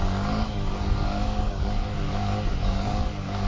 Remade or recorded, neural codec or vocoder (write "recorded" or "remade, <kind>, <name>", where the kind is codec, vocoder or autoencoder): remade, codec, DAC